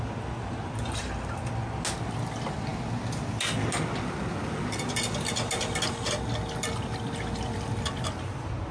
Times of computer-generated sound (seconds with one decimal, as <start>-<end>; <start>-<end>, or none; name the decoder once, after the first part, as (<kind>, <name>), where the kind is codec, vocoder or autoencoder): none